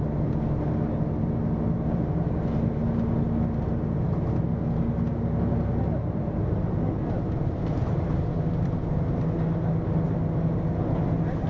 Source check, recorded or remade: recorded